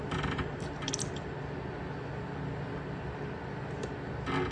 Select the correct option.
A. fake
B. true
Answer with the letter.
B